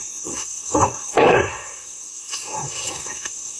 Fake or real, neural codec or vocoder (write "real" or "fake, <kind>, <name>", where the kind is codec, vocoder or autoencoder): fake, codec, SNAC